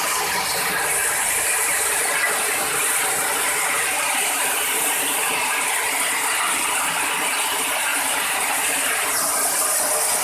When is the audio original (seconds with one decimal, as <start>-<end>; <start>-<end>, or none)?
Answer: 0.0-1.0; 5.7-7.9; 9.7-10.2